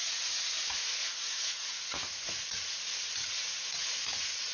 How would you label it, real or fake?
fake